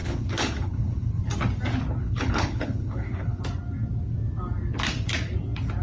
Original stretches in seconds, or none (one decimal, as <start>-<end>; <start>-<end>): 1.2-2.0; 3.4-5.8